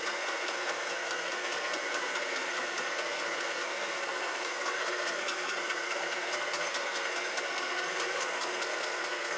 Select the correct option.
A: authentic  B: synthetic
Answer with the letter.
B